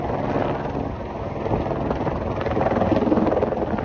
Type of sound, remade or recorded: recorded